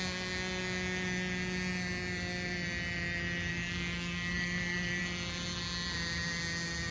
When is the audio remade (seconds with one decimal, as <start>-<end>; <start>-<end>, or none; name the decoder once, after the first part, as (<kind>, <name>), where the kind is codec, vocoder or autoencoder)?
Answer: 3.5-5.0 (codec, DAC)

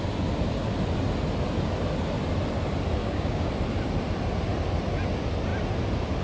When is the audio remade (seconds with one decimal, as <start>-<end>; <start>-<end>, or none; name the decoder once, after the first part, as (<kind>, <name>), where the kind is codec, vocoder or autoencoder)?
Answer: 3.0-3.5 (codec, DAC)